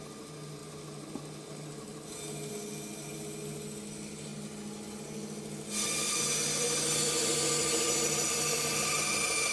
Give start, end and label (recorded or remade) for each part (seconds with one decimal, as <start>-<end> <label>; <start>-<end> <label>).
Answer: 0.0-9.5 recorded